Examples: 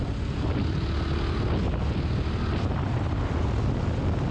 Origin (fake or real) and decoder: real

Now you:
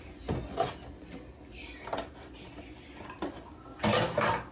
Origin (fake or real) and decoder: real